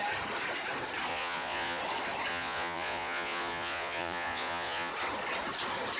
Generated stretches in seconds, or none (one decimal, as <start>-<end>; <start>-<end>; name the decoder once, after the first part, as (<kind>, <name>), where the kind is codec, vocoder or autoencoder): 1.1-1.8 (vocoder, Vocos); 2.3-4.9